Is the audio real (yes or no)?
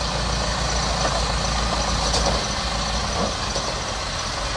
yes